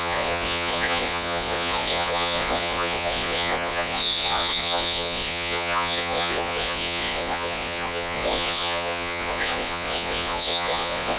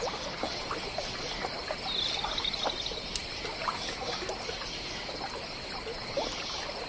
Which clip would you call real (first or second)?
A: second